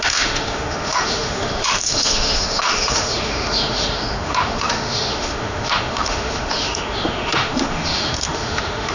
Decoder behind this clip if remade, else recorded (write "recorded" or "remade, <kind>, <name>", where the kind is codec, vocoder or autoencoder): remade, autoencoder, DAC-VAE